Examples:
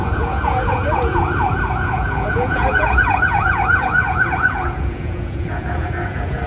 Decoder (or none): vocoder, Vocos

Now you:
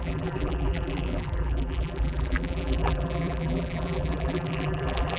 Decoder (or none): vocoder, BigVGAN v2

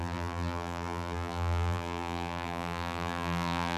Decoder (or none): vocoder, BigVGAN v2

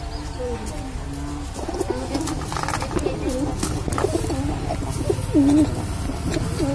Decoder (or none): none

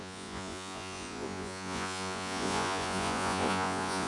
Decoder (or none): vocoder, Vocos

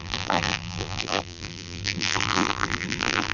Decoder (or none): vocoder, BigVGAN v2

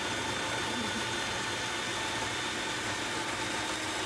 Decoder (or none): none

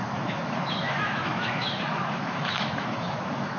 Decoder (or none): autoencoder, DAC-VAE